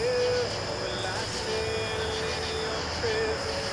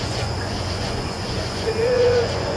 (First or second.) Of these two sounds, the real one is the first